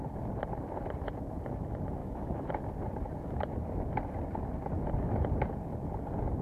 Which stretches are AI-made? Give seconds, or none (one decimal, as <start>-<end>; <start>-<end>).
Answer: 2.0-2.6